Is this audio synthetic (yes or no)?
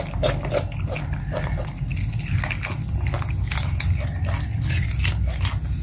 no